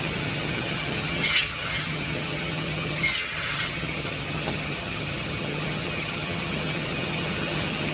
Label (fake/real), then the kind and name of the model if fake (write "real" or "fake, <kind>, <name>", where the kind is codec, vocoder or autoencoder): fake, vocoder, HiFi-GAN